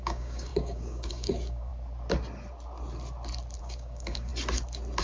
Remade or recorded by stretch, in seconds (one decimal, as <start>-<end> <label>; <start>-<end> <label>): 0.0-1.7 remade; 1.7-3.6 recorded; 3.6-4.3 remade; 4.3-5.0 recorded